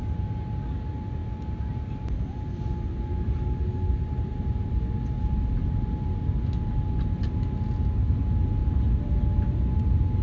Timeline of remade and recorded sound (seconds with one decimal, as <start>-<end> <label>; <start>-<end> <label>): 0.0-10.2 recorded

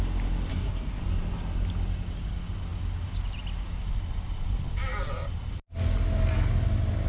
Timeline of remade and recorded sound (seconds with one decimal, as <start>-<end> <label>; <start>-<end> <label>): 0.0-0.5 recorded; 0.5-1.0 remade; 1.0-7.1 recorded

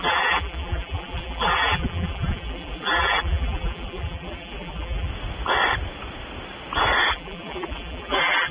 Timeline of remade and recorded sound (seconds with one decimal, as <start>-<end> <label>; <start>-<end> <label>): 0.0-5.1 remade; 5.1-7.1 recorded; 7.1-8.5 remade

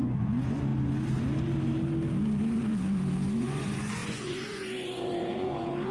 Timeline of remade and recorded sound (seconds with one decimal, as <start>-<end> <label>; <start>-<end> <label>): 0.0-0.7 remade; 0.7-3.4 recorded; 3.4-5.9 remade